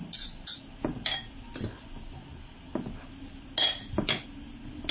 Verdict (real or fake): real